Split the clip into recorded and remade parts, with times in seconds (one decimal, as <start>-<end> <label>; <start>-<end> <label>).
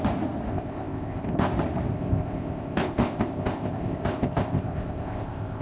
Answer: 0.0-0.5 recorded; 0.5-1.5 remade; 1.5-1.9 recorded; 1.9-5.6 remade